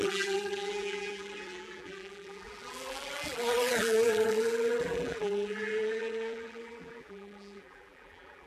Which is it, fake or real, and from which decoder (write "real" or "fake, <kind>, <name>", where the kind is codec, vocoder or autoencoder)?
fake, vocoder, BigVGAN v2